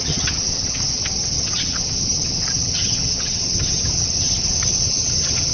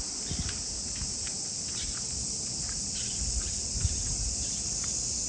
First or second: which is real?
second